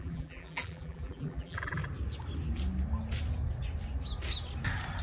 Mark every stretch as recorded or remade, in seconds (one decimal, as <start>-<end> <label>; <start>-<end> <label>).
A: 0.0-1.8 remade; 1.8-5.0 recorded